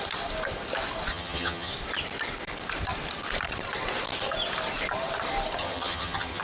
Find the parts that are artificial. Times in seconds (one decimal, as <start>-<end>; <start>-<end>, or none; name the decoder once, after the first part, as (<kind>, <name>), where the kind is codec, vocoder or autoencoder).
1.1-1.7 (vocoder, HiFi-GAN); 5.6-6.4